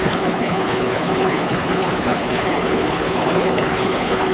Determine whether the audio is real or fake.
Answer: fake